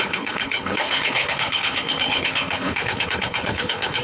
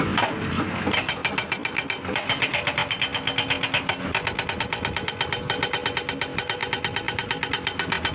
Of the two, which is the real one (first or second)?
second